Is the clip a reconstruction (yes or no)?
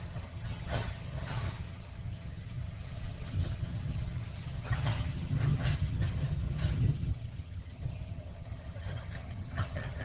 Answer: yes